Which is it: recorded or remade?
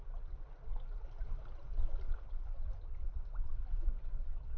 recorded